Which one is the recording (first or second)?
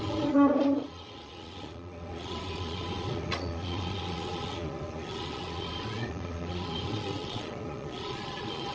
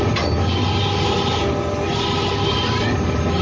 second